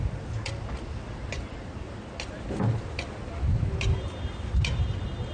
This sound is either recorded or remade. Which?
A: recorded